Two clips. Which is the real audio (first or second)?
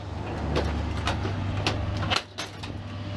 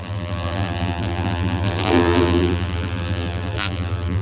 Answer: first